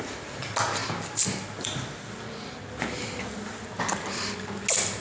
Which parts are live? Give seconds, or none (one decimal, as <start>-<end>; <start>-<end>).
0.0-5.0